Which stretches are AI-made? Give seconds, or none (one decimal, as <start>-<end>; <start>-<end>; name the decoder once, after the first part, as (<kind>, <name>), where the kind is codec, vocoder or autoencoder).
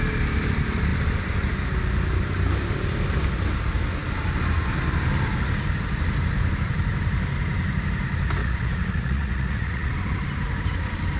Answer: 8.4-9.9 (vocoder, Vocos)